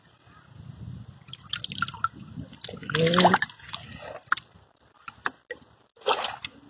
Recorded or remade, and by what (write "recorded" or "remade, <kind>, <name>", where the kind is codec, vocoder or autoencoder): recorded